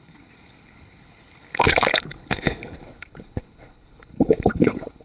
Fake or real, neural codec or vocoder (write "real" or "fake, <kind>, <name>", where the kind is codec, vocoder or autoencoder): fake, codec, HILCodec